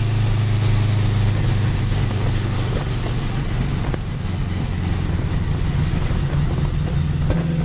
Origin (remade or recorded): recorded